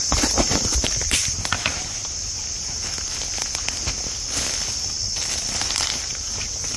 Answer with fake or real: real